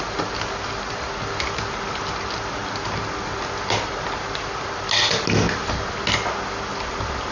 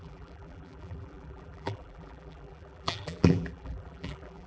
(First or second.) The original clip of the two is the first